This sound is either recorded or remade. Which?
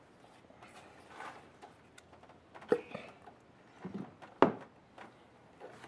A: recorded